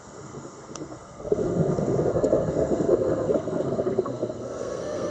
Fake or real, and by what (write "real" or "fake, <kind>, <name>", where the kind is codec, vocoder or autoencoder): fake, codec, SNAC